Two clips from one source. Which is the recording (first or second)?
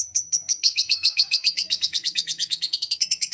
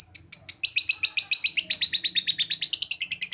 second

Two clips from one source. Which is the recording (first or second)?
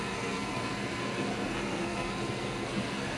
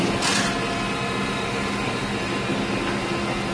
second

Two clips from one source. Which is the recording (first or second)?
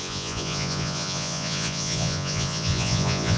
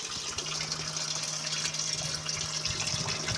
second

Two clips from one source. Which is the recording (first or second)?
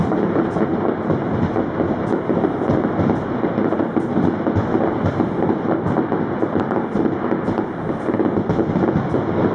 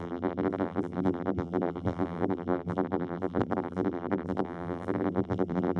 first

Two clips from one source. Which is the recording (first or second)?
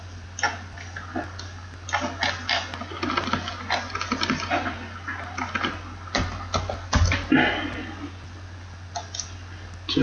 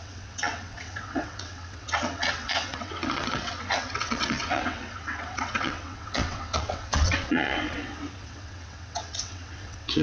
first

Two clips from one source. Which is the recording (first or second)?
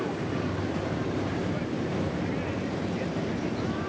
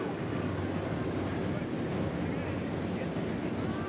second